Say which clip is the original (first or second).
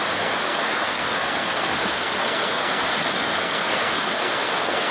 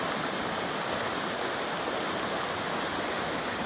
second